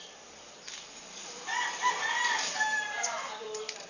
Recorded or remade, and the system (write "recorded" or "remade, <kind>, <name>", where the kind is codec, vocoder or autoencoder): remade, vocoder, BigVGAN v2